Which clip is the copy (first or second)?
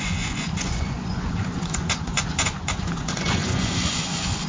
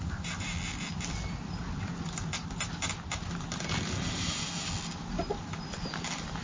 first